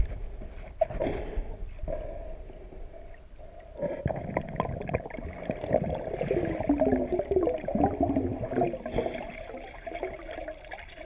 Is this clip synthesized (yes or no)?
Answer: no